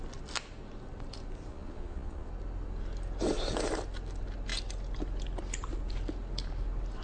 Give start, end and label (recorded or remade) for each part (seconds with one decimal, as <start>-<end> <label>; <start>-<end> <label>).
0.0-1.5 recorded; 1.5-2.3 remade; 2.3-7.0 recorded